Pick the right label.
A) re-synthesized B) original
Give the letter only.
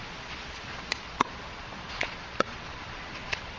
A